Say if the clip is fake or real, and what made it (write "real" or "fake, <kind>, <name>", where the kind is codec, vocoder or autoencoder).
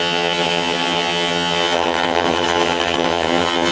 fake, vocoder, HiFi-GAN